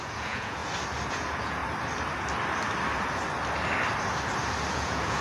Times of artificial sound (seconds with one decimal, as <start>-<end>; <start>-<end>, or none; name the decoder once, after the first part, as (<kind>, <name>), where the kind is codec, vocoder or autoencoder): 0.0-0.6 (vocoder, Vocos); 1.1-1.6; 4.7-5.2